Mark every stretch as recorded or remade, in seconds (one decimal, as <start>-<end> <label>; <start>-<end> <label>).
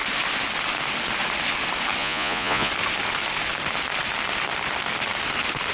0.0-2.0 recorded; 2.0-2.7 remade; 2.7-5.7 recorded